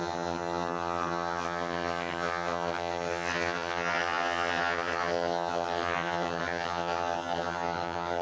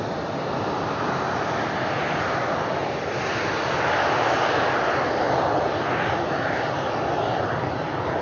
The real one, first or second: second